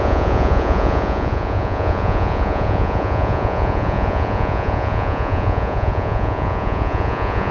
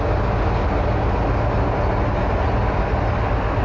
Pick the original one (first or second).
second